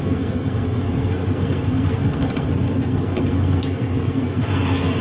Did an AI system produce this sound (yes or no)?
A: yes